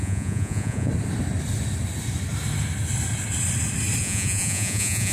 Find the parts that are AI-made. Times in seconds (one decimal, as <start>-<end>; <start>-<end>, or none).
0.0-0.9; 4.0-5.1